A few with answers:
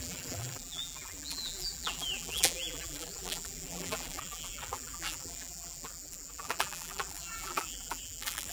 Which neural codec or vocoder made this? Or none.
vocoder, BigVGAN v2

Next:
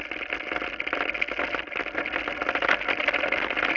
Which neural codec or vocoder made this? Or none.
none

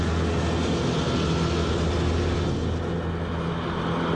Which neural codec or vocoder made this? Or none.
none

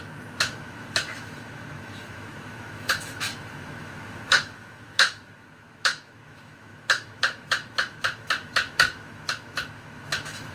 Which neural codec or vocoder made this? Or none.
autoencoder, DAC-VAE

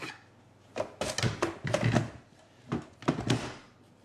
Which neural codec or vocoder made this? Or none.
none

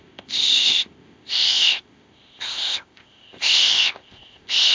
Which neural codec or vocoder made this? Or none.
codec, ZipCodec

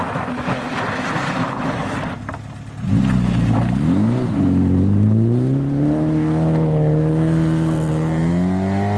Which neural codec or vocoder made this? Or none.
none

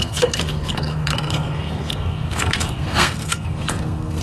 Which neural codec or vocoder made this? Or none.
codec, SNAC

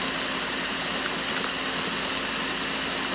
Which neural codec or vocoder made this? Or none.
none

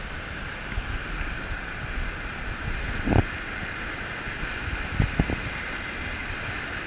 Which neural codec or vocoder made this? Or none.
none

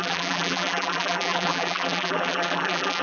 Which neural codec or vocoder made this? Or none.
vocoder, BigVGAN v2